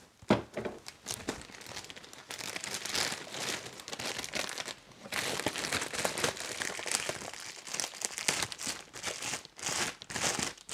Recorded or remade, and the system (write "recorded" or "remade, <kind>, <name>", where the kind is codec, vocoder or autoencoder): recorded